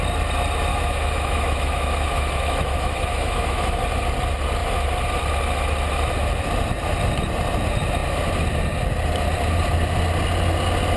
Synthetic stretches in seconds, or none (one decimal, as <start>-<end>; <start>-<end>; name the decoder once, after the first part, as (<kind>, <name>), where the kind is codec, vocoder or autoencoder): 0.7-3.8 (autoencoder, DAC-VAE)